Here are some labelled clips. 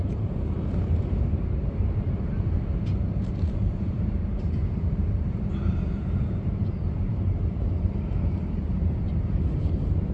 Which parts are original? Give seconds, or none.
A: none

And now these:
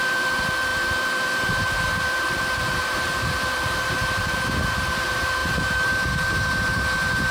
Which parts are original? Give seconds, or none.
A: none

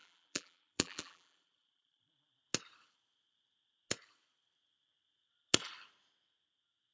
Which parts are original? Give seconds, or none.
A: 2.1-6.9

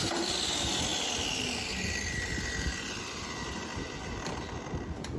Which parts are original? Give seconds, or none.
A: 0.0-5.2

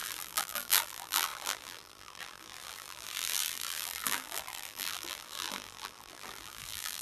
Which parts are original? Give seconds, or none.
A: none

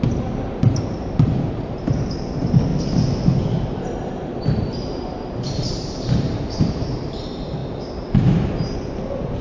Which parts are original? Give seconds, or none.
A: 7.6-8.9

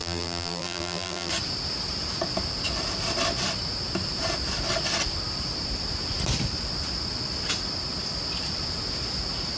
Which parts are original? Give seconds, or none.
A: 1.3-9.6

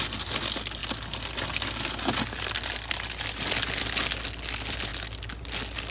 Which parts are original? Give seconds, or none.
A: 0.0-5.9